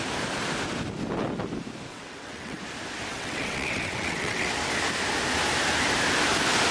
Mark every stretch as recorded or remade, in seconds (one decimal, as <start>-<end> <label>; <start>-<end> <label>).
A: 0.0-1.9 recorded; 1.9-2.6 remade; 2.6-3.1 recorded; 3.1-4.5 remade; 4.5-6.7 recorded